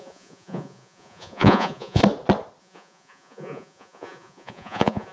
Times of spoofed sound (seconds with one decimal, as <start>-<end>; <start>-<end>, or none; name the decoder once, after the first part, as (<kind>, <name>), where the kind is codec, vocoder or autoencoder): 0.0-2.0 (vocoder, Vocos); 2.6-5.1